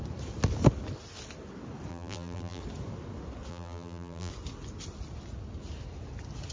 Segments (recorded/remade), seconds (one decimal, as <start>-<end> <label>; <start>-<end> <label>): 0.0-1.9 recorded; 1.9-2.6 remade; 2.6-3.5 recorded; 3.5-4.3 remade; 4.3-6.5 recorded